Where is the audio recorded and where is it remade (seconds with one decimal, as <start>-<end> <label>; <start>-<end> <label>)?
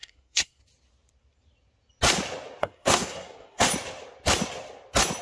0.0-0.6 remade; 0.6-2.6 recorded; 2.6-3.7 remade; 3.7-5.2 recorded